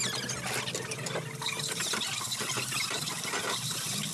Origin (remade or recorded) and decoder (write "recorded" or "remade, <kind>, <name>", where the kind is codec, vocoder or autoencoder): recorded